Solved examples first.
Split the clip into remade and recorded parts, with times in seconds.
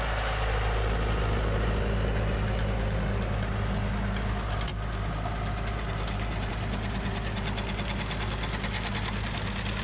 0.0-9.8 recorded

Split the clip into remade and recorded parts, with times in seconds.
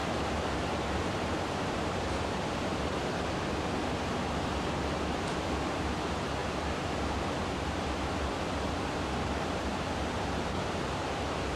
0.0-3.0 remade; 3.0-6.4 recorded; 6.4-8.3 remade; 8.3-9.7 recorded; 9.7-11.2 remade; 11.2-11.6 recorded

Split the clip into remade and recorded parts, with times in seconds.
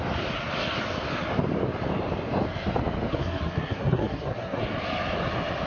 0.0-3.1 recorded; 3.1-4.6 remade; 4.6-5.7 recorded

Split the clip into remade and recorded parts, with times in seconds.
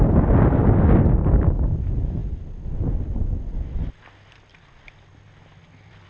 0.0-6.1 recorded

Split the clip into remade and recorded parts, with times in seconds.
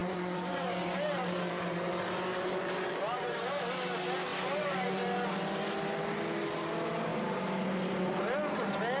0.0-1.9 remade; 1.9-2.3 recorded; 2.3-3.6 remade; 3.6-4.3 recorded; 4.3-4.9 remade; 4.9-7.1 recorded; 7.1-8.2 remade; 8.2-9.0 recorded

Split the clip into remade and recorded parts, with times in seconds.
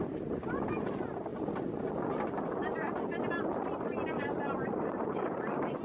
0.0-3.5 recorded; 3.5-5.8 remade